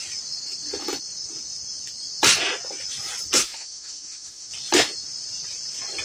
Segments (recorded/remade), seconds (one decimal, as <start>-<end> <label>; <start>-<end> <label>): 0.0-3.4 recorded; 3.4-4.5 remade; 4.5-6.0 recorded